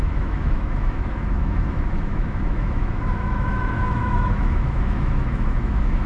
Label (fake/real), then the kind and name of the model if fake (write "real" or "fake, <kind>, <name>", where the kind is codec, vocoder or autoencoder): fake, autoencoder, DAC-VAE